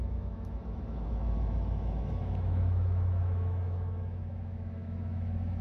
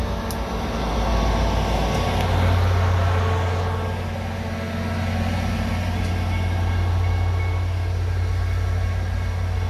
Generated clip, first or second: first